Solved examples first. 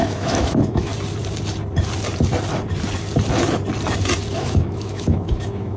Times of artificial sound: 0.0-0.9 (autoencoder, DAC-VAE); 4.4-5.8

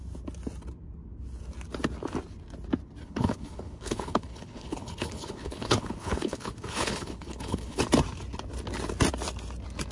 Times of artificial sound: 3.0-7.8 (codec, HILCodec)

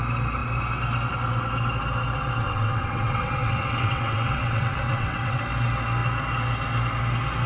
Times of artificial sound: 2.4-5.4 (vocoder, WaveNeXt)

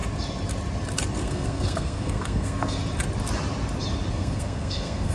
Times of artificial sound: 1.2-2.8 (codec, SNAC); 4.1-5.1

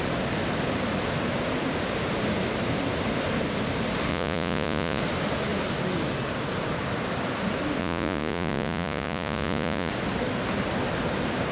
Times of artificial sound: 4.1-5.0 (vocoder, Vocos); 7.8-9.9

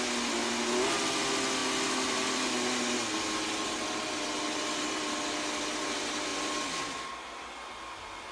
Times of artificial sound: none